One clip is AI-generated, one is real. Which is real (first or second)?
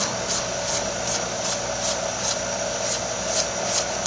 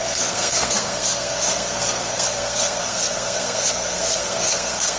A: first